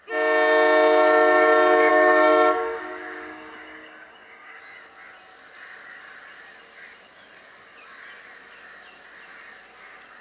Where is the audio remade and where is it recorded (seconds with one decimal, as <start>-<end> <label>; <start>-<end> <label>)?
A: 0.0-1.9 recorded; 1.9-4.6 remade; 4.6-10.2 recorded